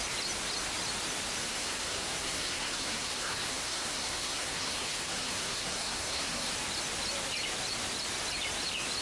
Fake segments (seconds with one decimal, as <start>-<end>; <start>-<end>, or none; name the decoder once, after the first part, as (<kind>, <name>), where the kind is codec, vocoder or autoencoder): 1.4-6.5 (codec, SNAC)